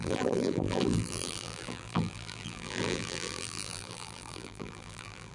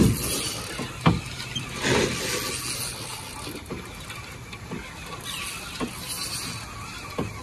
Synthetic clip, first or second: first